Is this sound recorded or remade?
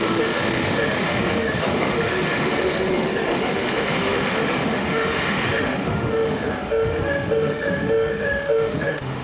remade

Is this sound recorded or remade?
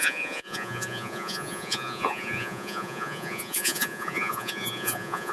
remade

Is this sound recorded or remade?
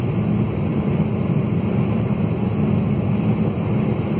recorded